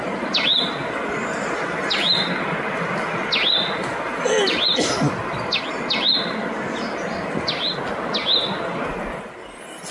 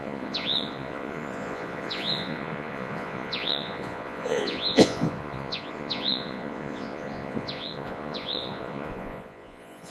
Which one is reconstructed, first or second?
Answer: second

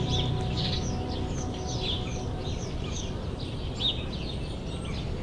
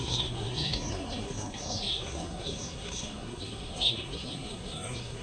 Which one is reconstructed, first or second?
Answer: second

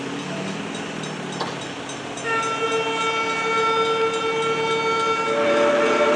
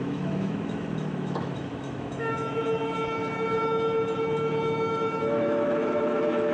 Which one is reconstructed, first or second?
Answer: second